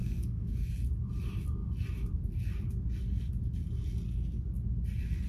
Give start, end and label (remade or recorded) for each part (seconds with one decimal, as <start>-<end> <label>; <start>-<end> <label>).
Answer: 0.0-0.7 remade; 0.7-5.3 recorded